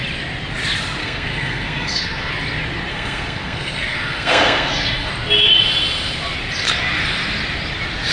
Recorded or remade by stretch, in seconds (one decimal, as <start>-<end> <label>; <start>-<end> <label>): 0.0-1.0 recorded; 1.0-2.3 remade; 2.3-2.9 recorded; 2.9-5.1 remade; 5.1-8.1 recorded